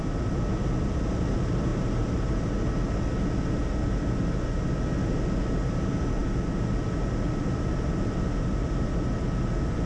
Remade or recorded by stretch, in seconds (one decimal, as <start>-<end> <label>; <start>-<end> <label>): 0.0-9.9 recorded

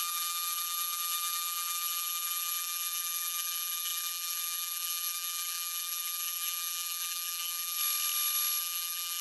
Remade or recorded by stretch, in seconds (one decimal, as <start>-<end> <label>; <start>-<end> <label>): 0.0-7.8 remade; 7.8-8.6 recorded; 8.6-9.2 remade

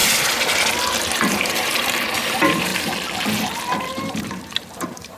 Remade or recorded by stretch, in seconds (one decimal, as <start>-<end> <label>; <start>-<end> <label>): 0.0-1.0 recorded; 1.0-2.7 remade; 2.7-4.1 recorded; 4.1-5.2 remade

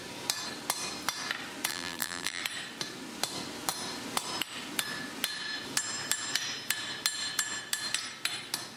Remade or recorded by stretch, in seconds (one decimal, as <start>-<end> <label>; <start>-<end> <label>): 0.0-1.7 recorded; 1.7-2.4 remade; 2.4-8.8 recorded

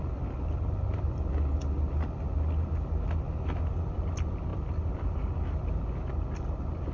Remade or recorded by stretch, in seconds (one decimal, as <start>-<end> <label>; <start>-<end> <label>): 0.0-4.5 recorded; 4.5-5.4 remade; 5.4-6.9 recorded

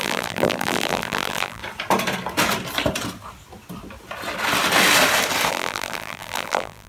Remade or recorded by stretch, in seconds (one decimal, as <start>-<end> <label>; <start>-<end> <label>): 0.0-1.6 remade; 1.6-5.5 recorded; 5.5-6.9 remade

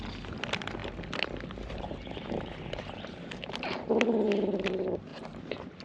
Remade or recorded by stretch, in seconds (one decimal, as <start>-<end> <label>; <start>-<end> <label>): 0.0-0.8 recorded; 0.8-4.3 remade; 4.3-5.1 recorded; 5.1-5.8 remade